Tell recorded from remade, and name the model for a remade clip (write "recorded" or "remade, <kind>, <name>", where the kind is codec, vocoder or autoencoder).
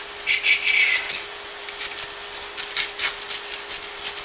recorded